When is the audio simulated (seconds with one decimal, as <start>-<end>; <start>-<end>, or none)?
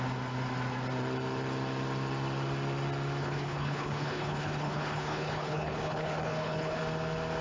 3.2-6.8